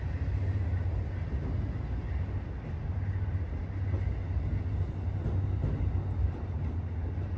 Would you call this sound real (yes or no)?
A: yes